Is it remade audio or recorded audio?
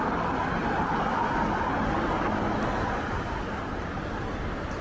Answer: recorded